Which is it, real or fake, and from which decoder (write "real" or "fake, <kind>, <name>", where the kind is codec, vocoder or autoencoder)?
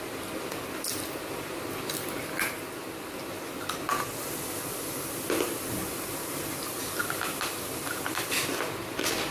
real